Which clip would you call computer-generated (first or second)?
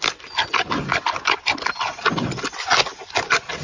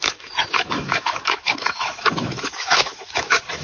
second